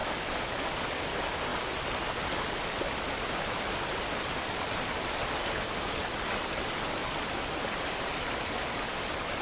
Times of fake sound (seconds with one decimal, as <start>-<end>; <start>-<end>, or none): 1.0-1.5; 2.2-7.0; 7.6-9.4